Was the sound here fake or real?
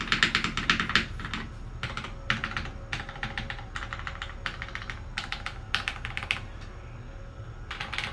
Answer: real